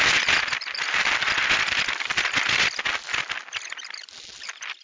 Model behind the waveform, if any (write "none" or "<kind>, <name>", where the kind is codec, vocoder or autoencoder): none